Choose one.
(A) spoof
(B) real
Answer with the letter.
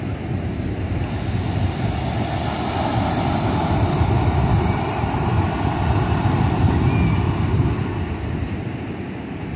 B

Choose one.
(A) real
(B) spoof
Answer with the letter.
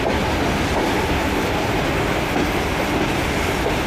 A